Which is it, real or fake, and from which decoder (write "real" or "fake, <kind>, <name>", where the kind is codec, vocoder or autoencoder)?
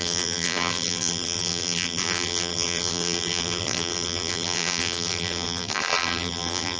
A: fake, vocoder, BigVGAN v2